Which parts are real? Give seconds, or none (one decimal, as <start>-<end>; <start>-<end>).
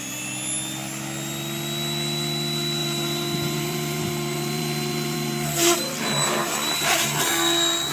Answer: 0.0-2.8; 7.2-7.9